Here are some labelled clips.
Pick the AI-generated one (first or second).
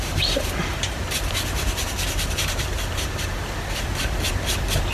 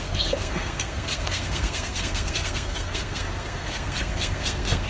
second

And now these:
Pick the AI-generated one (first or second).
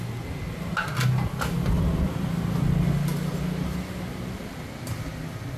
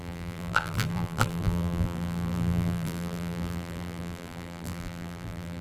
second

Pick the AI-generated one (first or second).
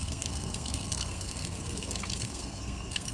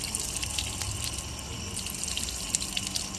first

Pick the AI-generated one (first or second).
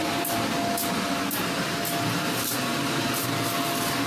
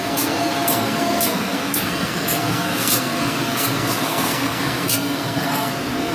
second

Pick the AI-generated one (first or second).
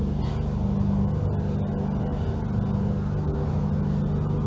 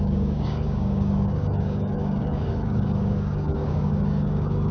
second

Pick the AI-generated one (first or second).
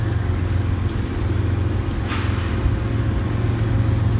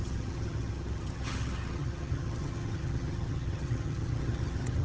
second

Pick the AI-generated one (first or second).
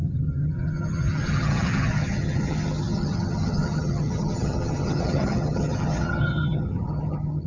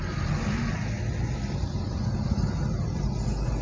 first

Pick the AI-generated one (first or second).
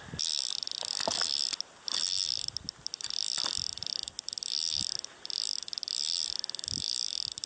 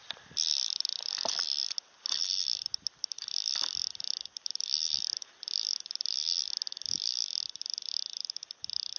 second